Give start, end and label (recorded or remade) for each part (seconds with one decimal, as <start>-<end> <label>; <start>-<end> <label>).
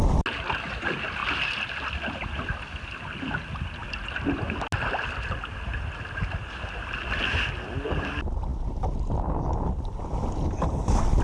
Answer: 0.0-11.2 recorded